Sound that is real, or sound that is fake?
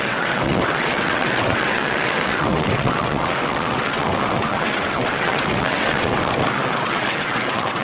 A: fake